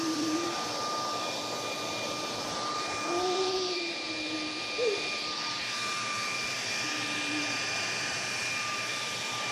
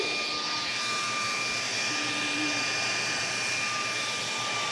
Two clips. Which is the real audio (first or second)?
second